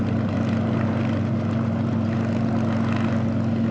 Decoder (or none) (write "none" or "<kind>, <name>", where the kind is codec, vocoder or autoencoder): none